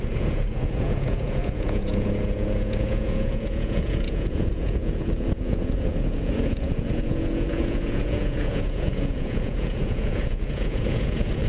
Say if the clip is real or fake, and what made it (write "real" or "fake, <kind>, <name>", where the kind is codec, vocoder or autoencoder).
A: fake, vocoder, Vocos